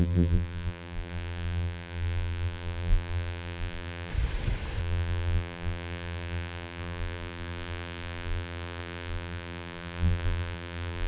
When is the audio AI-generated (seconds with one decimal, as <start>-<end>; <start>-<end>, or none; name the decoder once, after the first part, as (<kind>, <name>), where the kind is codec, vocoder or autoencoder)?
0.0-4.1 (vocoder, BigVGAN v2); 4.8-11.1